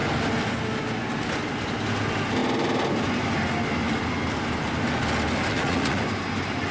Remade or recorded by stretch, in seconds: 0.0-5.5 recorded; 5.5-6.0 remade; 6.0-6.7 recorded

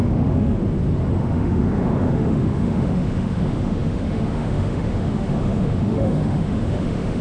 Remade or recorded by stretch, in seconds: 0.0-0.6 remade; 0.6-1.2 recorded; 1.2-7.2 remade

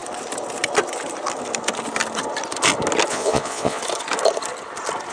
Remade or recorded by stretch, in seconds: 0.0-3.1 recorded; 3.1-3.8 remade; 3.8-5.1 recorded

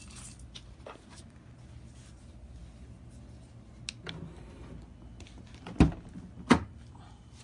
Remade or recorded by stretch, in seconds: 0.0-2.6 remade; 2.6-6.5 recorded; 6.5-7.4 remade

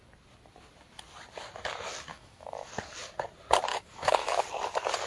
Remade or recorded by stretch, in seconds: 0.0-2.1 recorded; 2.1-2.7 remade; 2.7-3.7 recorded; 3.7-4.4 remade; 4.4-5.1 recorded

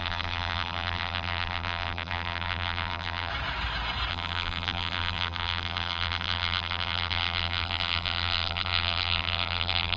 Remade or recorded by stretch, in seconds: 0.0-3.3 remade; 3.3-4.1 recorded; 4.1-10.0 remade